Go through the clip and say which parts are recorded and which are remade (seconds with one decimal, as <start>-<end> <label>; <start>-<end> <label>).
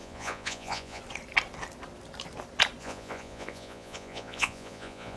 0.0-1.0 remade; 1.0-2.8 recorded; 2.8-5.2 remade